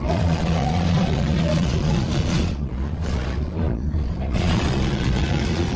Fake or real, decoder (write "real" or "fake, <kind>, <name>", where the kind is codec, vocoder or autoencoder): fake, vocoder, Vocos